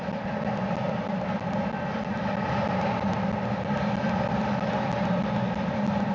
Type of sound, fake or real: real